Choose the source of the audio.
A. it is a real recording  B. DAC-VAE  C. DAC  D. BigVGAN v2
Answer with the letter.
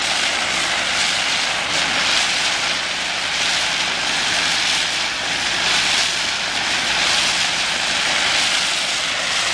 D